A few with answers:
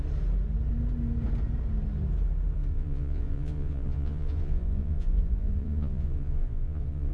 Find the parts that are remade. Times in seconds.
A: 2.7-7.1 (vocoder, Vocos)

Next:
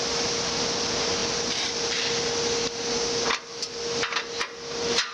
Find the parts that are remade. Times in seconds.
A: none

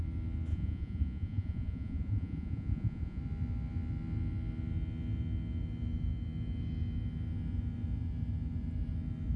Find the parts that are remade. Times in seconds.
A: 0.5-3.2 (vocoder, Vocos)